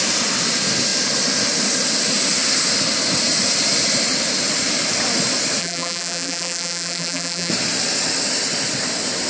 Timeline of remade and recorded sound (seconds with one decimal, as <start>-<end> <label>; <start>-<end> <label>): 0.0-5.6 recorded; 5.6-7.5 remade; 7.5-9.3 recorded